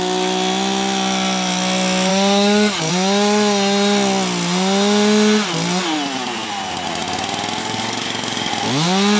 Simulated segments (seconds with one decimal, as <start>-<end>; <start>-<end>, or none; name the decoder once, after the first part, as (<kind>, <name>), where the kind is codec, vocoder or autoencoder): 2.1-2.9 (codec, DAC); 7.6-8.5